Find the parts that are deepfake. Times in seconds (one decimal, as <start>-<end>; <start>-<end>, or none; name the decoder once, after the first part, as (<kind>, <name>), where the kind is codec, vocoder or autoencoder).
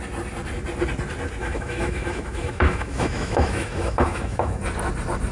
1.4-4.6 (autoencoder, DAC-VAE)